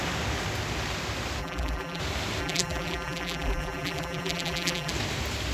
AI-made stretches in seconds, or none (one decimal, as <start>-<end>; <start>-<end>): 1.4-2.0; 2.4-4.9